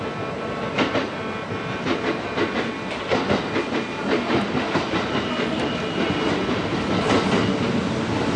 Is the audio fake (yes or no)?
no